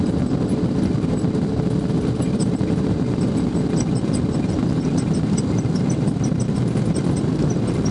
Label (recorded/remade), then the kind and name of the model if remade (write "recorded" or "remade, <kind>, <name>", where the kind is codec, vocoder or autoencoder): recorded